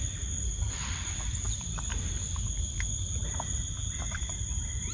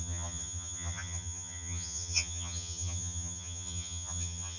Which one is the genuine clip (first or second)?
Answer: first